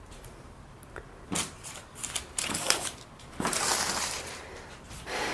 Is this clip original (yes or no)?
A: no